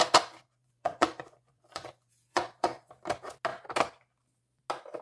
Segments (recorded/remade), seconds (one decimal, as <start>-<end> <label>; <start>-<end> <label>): 0.0-0.6 recorded; 0.6-2.9 remade; 2.9-5.0 recorded

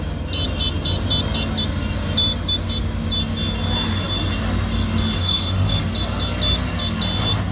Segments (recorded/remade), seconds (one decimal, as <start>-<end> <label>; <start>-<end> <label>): 0.0-5.2 recorded; 5.2-5.8 remade; 5.8-7.5 recorded

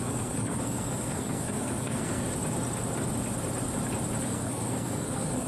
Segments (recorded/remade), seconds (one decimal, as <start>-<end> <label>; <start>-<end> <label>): 0.0-2.2 remade; 2.2-4.2 recorded; 4.2-5.5 remade

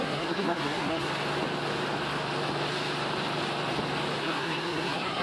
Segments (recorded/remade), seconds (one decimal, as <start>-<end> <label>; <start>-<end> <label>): 0.0-1.1 remade; 1.1-4.2 recorded; 4.2-5.2 remade

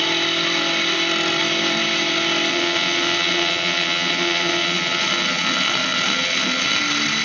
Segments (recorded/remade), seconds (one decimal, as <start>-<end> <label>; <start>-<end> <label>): 0.0-2.5 recorded; 2.5-6.8 remade; 6.8-7.2 recorded

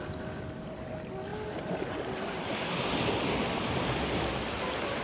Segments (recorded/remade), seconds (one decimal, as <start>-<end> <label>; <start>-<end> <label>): 0.0-5.0 recorded

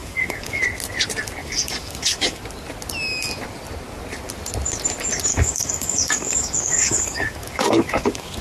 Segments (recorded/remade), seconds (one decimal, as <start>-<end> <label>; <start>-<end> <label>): 0.0-0.6 remade; 0.6-1.4 recorded; 1.4-2.4 remade; 2.4-5.3 recorded; 5.3-8.4 remade

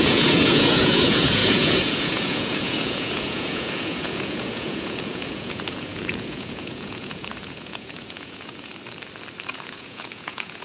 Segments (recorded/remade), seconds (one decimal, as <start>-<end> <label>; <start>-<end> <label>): 0.0-8.7 remade; 8.7-9.5 recorded; 9.5-10.6 remade